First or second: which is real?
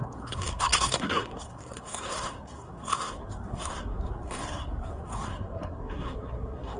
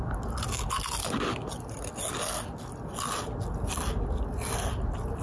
second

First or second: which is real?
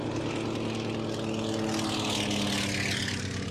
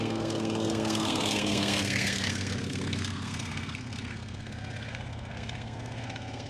first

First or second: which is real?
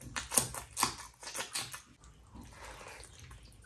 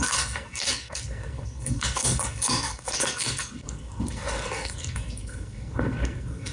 first